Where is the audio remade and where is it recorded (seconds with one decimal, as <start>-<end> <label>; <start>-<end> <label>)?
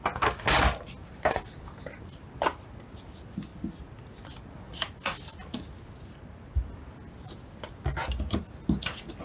0.0-9.2 recorded